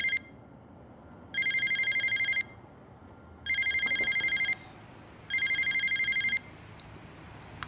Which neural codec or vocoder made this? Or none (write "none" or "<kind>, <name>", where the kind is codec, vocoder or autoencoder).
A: none